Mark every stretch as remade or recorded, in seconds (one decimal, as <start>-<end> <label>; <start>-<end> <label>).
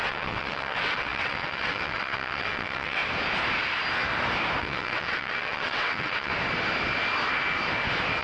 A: 0.0-3.0 remade; 3.0-4.6 recorded; 4.6-6.3 remade; 6.3-8.2 recorded